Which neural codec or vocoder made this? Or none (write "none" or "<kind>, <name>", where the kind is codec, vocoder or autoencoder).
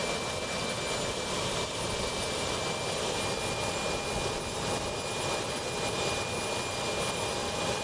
none